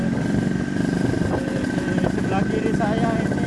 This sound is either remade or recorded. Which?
recorded